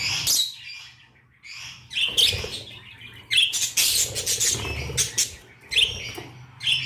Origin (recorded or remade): recorded